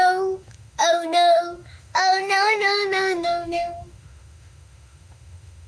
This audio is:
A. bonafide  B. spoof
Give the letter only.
B